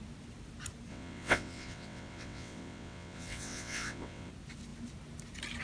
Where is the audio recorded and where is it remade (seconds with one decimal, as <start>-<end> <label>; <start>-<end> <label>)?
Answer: 0.0-0.9 recorded; 0.9-4.3 remade; 4.3-5.6 recorded